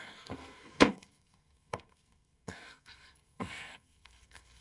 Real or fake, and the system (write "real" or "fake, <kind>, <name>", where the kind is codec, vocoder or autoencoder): fake, codec, SNAC